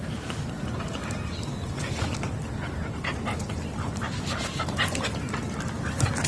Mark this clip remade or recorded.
recorded